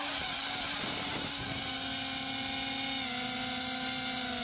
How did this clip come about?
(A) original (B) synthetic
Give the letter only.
A